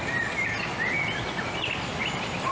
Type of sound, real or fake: real